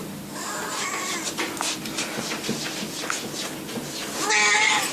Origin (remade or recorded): recorded